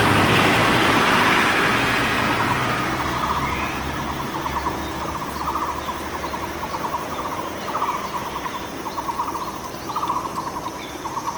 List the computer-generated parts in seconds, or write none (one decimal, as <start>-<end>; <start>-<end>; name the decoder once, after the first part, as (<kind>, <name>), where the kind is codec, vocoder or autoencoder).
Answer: 0.0-0.6 (vocoder, BigVGAN v2); 2.1-10.3; 10.8-11.4